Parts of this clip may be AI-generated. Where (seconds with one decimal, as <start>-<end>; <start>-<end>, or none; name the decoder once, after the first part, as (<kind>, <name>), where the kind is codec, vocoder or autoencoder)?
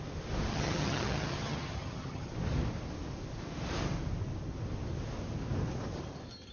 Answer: 0.5-2.3 (vocoder, HiFi-GAN)